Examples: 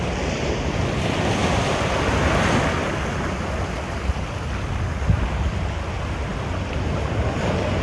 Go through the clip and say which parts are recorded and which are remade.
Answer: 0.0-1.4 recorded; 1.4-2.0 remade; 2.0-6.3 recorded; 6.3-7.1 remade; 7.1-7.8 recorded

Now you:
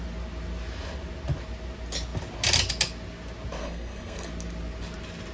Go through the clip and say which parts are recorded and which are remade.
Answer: 0.0-3.6 recorded; 3.6-4.3 remade; 4.3-5.3 recorded

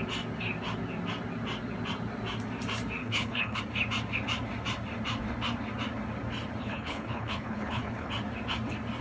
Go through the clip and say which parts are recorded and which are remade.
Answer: 0.0-3.0 recorded; 3.0-3.6 remade; 3.6-6.6 recorded; 6.6-8.1 remade; 8.1-9.0 recorded